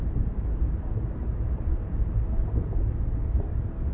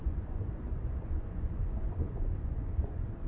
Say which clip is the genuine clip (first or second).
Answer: first